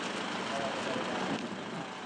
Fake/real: real